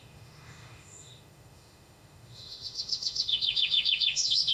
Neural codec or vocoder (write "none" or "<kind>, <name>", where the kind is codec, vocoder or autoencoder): autoencoder, DAC-VAE